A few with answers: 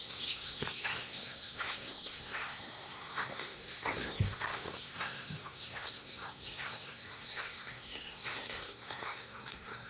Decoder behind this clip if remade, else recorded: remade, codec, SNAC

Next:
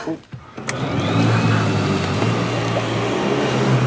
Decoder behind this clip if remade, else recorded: recorded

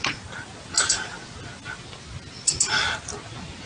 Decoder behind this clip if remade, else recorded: recorded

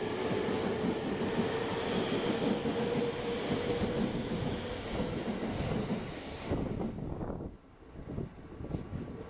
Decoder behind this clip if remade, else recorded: recorded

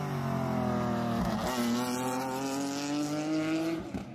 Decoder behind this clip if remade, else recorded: recorded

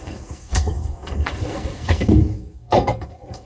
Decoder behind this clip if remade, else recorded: remade, codec, SNAC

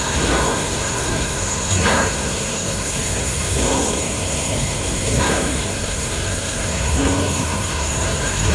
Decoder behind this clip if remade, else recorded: remade, codec, SNAC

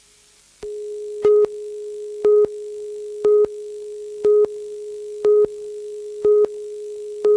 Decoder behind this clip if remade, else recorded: recorded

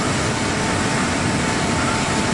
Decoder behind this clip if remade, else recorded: recorded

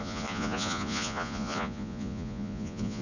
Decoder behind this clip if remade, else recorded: remade, vocoder, Vocos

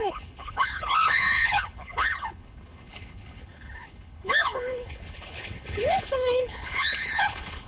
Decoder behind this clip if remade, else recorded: remade, codec, HILCodec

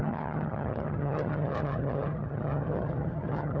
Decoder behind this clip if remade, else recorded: remade, vocoder, HiFi-GAN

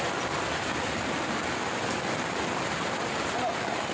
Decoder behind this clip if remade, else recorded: recorded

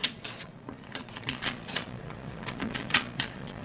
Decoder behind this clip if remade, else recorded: remade, vocoder, Vocos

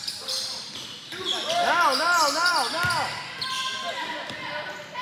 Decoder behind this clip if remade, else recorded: recorded